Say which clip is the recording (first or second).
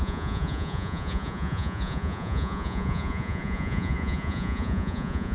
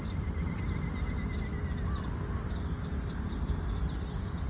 second